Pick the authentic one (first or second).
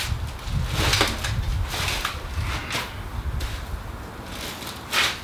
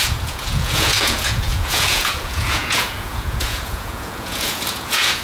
first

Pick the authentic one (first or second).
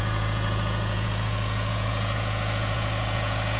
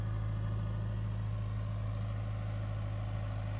second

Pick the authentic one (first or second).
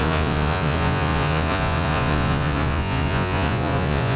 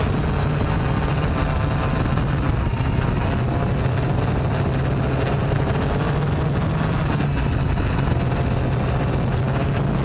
second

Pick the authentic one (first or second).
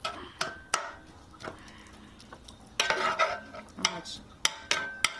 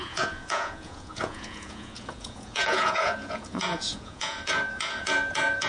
first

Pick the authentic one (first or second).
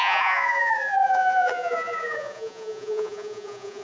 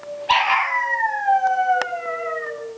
second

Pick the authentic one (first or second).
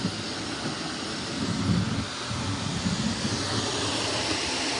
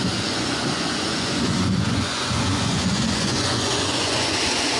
first